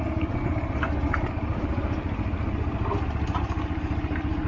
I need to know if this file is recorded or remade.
recorded